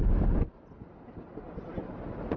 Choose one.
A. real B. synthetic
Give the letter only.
A